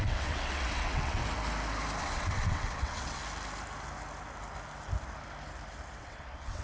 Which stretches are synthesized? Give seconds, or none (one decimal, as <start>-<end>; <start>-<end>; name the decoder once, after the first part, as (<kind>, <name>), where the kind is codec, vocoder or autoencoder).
0.0-1.2 (vocoder, WaveNeXt); 2.0-3.2; 6.0-6.6